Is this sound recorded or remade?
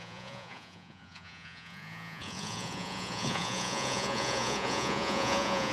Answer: remade